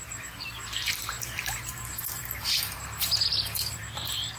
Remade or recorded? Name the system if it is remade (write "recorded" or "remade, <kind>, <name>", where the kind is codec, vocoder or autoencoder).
remade, vocoder, BigVGAN v2